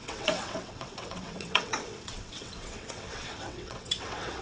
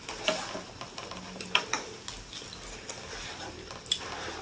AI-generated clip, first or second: first